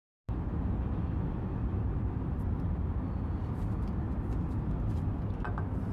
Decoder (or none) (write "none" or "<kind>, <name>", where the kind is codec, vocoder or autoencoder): none